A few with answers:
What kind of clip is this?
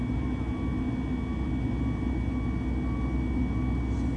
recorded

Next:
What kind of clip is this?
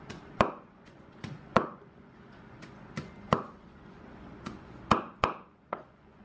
remade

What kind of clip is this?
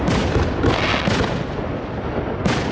recorded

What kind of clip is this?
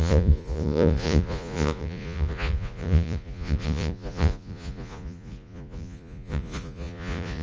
remade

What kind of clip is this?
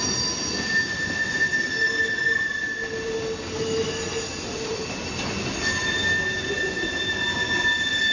recorded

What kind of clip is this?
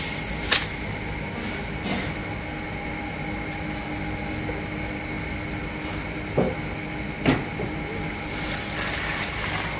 recorded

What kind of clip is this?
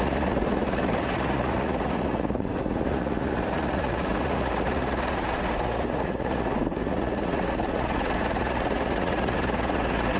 remade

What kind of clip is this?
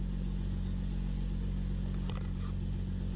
recorded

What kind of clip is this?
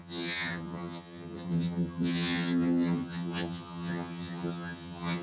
remade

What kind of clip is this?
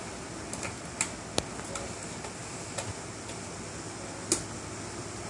recorded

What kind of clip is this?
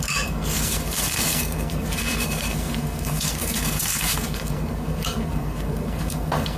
remade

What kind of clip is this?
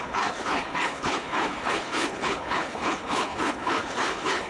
remade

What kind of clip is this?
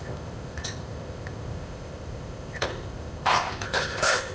remade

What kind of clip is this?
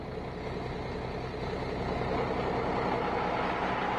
recorded